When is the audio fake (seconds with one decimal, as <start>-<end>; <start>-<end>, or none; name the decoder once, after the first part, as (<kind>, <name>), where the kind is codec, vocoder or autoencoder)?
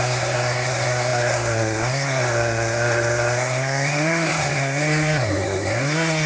0.0-6.3 (codec, SNAC)